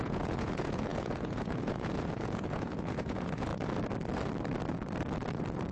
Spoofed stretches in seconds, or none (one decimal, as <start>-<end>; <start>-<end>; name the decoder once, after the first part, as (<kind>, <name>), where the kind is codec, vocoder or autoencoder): 0.0-3.5 (vocoder, Vocos)